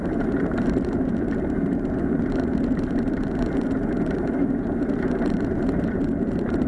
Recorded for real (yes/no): no